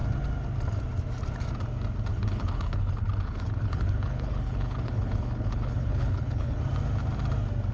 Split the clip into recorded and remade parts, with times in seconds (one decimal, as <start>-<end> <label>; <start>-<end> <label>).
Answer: 0.0-2.1 recorded; 2.1-6.6 remade; 6.6-7.7 recorded